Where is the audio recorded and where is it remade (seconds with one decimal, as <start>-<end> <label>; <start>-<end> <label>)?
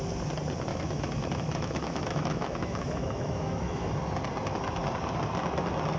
0.0-0.7 recorded; 0.7-3.9 remade; 3.9-6.0 recorded